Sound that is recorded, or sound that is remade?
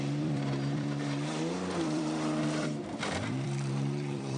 remade